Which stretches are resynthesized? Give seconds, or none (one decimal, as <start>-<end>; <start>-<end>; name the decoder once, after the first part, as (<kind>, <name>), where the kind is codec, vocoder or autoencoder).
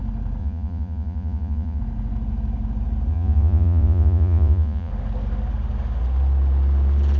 0.4-1.8 (vocoder, Vocos); 3.1-4.9